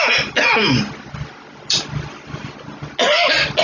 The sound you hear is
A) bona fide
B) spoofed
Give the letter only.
A